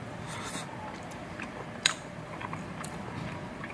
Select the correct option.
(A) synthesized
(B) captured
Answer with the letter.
A